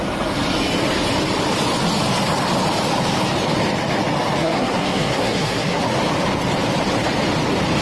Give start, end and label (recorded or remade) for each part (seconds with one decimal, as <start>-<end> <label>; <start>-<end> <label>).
0.0-4.4 recorded; 4.4-5.8 remade; 5.8-7.8 recorded